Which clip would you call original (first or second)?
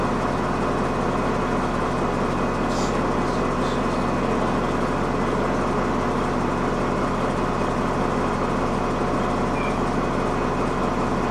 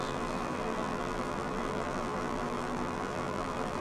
first